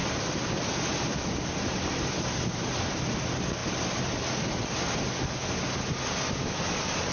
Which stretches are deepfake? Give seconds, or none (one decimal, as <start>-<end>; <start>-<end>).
0.0-2.9